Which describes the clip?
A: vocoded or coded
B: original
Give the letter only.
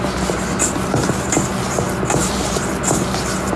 B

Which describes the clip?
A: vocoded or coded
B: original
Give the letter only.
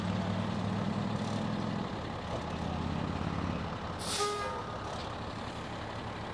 B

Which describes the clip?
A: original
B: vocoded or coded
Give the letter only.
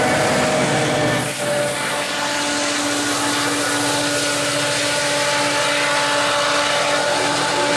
A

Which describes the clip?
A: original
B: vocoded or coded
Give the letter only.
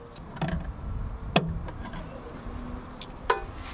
A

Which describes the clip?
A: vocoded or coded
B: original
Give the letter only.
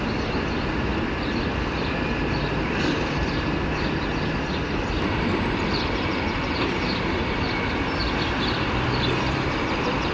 A